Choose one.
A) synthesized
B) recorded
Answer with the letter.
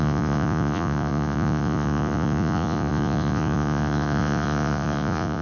A